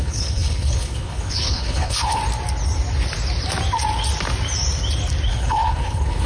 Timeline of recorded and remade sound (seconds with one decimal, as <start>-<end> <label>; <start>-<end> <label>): 0.0-2.2 remade; 2.2-5.3 recorded; 5.3-6.3 remade